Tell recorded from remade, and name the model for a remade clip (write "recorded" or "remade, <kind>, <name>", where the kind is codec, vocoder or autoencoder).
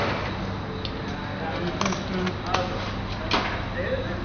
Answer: recorded